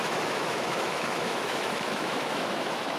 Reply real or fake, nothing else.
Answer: fake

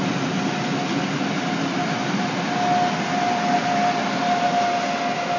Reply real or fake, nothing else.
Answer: real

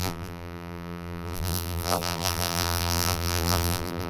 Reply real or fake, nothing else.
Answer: fake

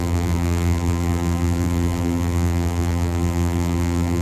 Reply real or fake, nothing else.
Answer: fake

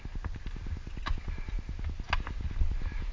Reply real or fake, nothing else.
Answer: real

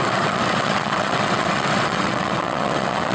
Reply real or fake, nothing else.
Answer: fake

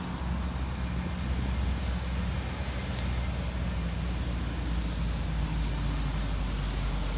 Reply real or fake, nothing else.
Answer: real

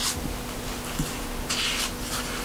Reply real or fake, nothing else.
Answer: real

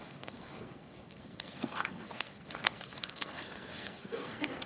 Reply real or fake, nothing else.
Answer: fake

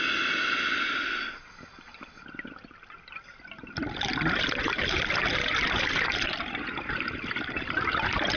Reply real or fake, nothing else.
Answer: real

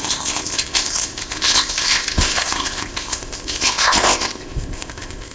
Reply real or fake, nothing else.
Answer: fake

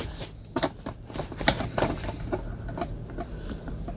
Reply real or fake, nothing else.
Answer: real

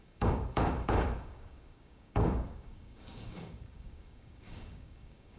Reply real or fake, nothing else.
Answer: fake